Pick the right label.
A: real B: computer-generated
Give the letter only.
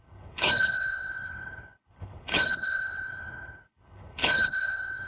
B